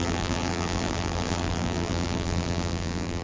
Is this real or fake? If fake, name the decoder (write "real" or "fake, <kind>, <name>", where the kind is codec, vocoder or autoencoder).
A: fake, vocoder, BigVGAN v2